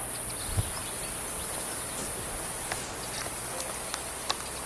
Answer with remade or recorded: recorded